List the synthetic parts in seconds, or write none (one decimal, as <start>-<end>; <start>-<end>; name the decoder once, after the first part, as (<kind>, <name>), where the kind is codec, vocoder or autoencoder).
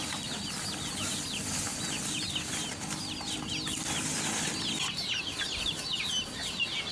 none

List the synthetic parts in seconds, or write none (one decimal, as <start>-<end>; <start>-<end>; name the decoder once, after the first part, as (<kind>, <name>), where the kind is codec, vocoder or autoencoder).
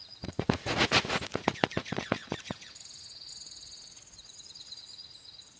0.0-5.6 (vocoder, Vocos)